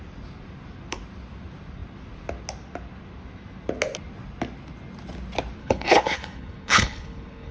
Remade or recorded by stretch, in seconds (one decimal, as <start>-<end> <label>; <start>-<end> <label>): 0.0-5.6 recorded; 5.6-7.5 remade